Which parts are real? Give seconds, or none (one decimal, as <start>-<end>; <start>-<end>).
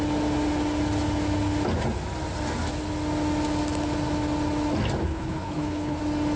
0.0-5.0; 6.0-6.4